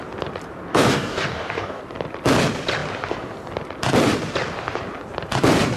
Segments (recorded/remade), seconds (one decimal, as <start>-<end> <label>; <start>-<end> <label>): 0.0-0.7 recorded; 0.7-1.8 remade; 1.8-5.8 recorded